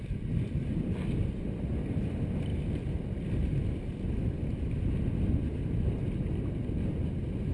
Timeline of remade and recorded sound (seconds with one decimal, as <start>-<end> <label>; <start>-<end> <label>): 0.0-7.5 recorded